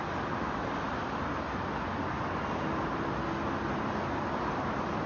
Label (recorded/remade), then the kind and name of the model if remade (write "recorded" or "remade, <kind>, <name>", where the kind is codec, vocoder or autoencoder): recorded